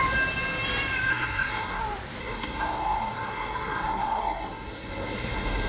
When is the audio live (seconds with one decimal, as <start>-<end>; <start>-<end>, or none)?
0.0-1.1; 1.8-2.2